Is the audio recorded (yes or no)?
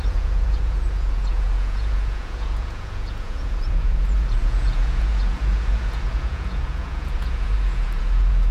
no